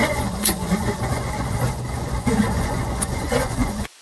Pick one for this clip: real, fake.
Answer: fake